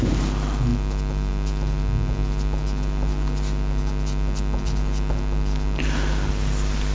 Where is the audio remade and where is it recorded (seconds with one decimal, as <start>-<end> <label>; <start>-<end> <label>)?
0.0-6.9 recorded